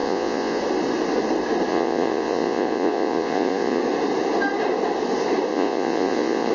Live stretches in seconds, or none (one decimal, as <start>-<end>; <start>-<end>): 0.6-1.7; 3.8-5.5